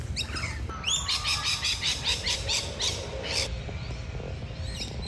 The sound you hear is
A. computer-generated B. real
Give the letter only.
B